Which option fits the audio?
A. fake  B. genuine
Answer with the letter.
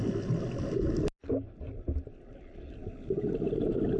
B